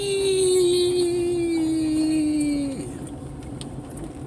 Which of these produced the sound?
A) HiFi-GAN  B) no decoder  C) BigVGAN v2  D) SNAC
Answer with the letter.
B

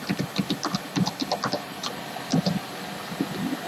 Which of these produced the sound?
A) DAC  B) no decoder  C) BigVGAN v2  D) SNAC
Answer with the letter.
B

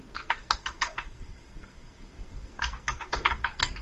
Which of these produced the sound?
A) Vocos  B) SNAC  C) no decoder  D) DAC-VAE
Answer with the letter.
B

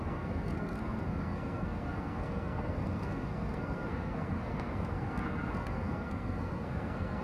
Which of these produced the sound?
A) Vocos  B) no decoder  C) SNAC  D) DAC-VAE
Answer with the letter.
C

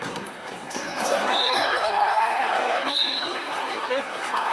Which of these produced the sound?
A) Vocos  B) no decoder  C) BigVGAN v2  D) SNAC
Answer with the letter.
D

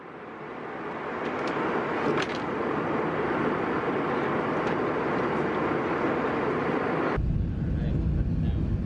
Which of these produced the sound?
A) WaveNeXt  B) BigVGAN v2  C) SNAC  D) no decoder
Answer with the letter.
D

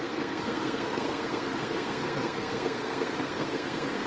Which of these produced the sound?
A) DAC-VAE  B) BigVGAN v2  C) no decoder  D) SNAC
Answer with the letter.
D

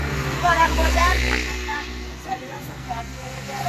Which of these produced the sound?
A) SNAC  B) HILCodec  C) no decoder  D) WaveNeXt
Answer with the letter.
A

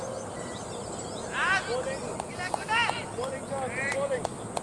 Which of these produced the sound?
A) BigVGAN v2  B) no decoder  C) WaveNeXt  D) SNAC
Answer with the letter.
B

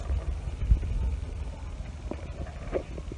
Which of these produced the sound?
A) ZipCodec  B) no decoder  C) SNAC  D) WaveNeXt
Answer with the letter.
B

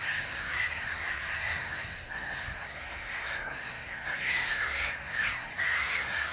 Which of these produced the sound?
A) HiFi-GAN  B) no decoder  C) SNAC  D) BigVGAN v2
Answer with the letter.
C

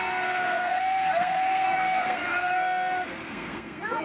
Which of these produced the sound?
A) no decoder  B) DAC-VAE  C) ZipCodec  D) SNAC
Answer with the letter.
D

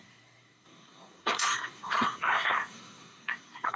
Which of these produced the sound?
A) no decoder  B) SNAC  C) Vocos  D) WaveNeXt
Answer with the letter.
B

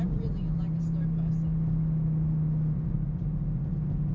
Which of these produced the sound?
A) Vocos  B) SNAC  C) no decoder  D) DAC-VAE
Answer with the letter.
C